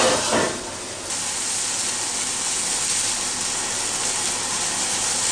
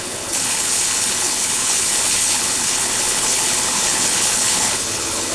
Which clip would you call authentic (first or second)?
first